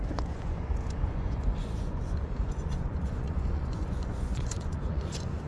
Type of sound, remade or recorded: remade